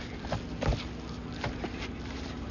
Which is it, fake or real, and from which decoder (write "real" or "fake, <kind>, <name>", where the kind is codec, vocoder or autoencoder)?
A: real